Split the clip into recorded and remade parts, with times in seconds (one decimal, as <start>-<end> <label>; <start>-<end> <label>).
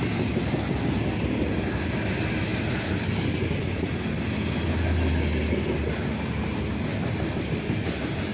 0.0-2.5 recorded; 2.5-3.8 remade; 3.8-6.9 recorded; 6.9-7.5 remade; 7.5-8.3 recorded